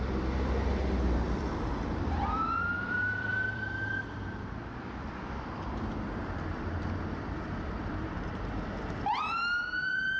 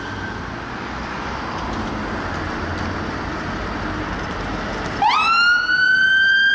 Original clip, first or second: second